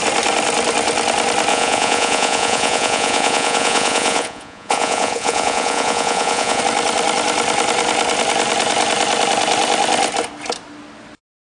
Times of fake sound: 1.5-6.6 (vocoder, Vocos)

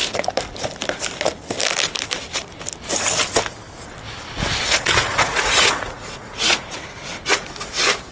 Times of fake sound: 4.6-7.1 (vocoder, Vocos)